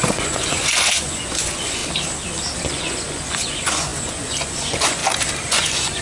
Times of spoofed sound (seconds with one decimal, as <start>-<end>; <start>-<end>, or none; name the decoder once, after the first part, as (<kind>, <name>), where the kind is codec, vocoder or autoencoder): 0.0-1.8 (vocoder, Vocos); 2.7-5.0; 5.5-6.0